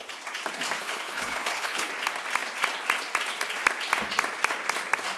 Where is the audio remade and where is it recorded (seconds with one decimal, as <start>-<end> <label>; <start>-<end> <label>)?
0.0-0.8 recorded; 0.8-1.9 remade; 1.9-5.2 recorded

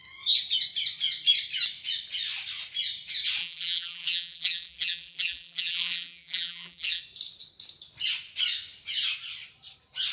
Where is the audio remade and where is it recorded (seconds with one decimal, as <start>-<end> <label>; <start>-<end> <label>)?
0.0-3.4 recorded; 3.4-7.0 remade; 7.0-10.1 recorded

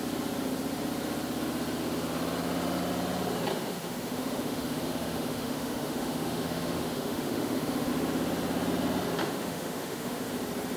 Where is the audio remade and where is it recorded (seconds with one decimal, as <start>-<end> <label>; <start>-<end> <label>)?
0.0-3.5 recorded; 3.5-7.9 remade; 7.9-9.2 recorded; 9.2-10.3 remade; 10.3-10.8 recorded

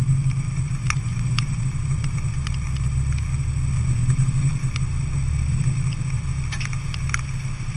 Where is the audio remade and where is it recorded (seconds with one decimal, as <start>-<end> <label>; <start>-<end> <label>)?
0.0-0.8 recorded; 0.8-1.6 remade; 1.6-7.8 recorded